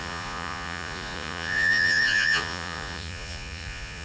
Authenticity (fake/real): fake